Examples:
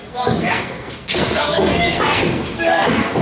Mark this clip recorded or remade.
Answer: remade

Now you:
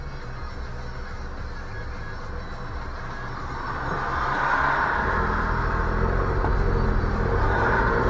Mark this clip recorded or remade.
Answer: recorded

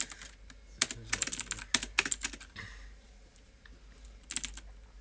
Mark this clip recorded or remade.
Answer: recorded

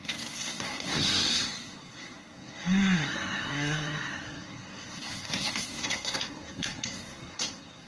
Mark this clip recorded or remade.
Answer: remade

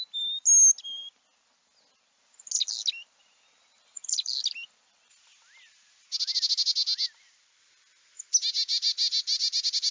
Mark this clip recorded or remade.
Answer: recorded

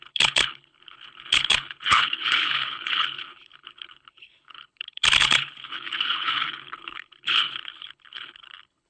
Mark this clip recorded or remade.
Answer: remade